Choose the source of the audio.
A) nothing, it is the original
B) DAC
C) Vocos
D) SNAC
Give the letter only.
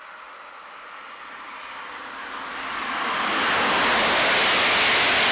A